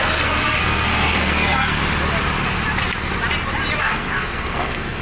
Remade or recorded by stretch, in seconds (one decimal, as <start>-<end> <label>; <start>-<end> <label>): 0.0-1.8 remade; 1.8-3.8 recorded; 3.8-5.0 remade